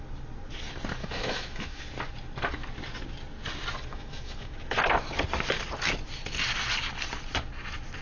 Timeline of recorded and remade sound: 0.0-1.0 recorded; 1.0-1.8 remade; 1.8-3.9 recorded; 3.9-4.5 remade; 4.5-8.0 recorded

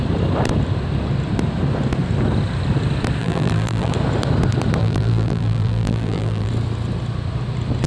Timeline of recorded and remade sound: 0.0-3.2 recorded; 3.2-3.9 remade; 3.9-4.8 recorded; 4.8-6.5 remade; 6.5-7.9 recorded

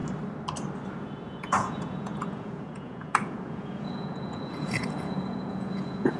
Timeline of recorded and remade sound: 0.0-0.9 recorded; 0.9-6.2 remade

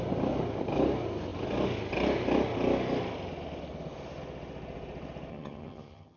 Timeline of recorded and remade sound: 0.0-5.3 recorded; 5.3-6.2 remade

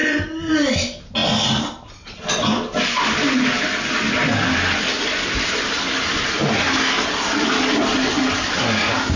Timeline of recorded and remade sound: 0.0-9.2 recorded

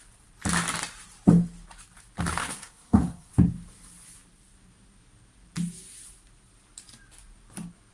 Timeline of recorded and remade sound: 0.0-2.4 recorded; 2.4-3.3 remade; 3.3-7.9 recorded

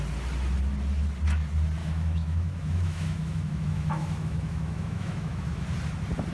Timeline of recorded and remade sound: 0.0-1.8 recorded; 1.8-5.6 remade; 5.6-6.3 recorded